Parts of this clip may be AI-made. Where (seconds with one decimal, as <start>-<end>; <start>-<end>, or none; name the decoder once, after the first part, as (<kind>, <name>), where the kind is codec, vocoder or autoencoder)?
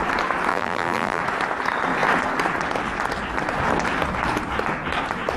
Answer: 0.5-1.2 (vocoder, BigVGAN v2)